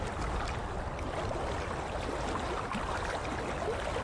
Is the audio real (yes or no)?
yes